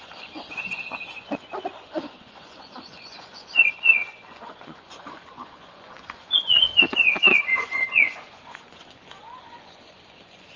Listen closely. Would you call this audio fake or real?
fake